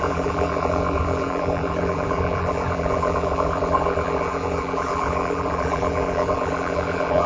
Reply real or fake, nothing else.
fake